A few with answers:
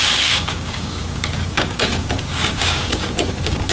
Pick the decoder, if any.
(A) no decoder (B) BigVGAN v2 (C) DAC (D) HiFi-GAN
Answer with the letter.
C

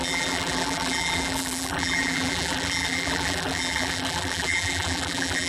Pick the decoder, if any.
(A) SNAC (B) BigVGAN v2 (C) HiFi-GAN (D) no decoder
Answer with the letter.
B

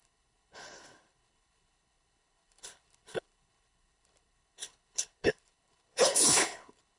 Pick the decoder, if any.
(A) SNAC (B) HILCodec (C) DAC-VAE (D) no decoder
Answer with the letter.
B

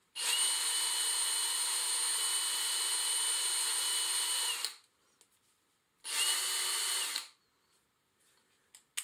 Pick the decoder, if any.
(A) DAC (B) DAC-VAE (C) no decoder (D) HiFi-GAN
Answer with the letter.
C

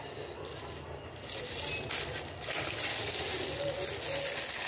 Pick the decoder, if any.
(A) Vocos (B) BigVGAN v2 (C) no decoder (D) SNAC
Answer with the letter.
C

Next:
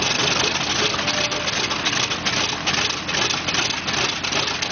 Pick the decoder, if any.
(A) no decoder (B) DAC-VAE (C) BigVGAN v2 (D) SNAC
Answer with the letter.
A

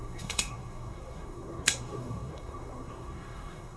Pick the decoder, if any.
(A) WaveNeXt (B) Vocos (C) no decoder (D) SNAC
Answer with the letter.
D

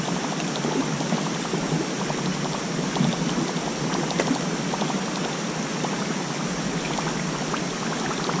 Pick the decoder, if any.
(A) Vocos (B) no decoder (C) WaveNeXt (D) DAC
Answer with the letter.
B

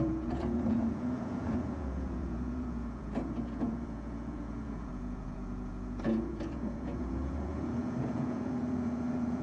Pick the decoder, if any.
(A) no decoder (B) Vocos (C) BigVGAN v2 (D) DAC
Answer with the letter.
B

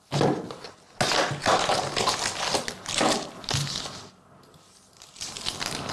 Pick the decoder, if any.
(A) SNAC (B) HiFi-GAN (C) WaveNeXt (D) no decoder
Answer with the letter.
D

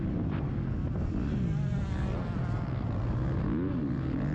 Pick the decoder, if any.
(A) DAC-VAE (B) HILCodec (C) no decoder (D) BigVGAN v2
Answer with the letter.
C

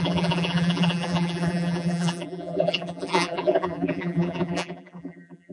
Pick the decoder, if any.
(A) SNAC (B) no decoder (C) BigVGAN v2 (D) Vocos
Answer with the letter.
C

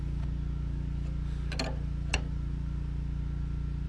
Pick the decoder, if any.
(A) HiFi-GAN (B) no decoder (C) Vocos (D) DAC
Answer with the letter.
B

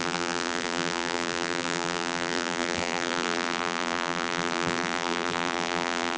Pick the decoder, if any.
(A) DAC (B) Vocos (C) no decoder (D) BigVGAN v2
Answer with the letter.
D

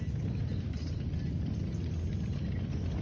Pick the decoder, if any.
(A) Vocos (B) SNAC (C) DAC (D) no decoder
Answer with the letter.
D